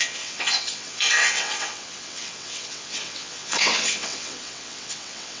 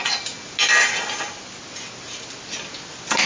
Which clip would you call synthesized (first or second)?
first